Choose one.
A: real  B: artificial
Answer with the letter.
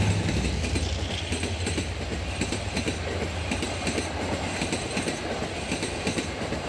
A